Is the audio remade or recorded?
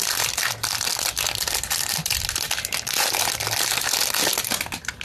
recorded